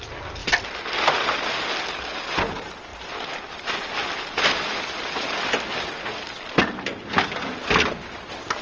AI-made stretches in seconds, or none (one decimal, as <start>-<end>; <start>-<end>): 0.4-1.0; 2.9-6.6